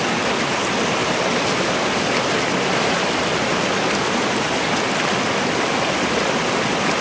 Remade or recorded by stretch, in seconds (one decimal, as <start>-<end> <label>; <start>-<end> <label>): 0.0-7.0 recorded